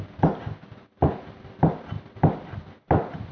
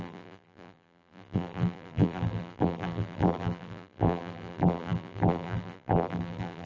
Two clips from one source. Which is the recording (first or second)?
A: first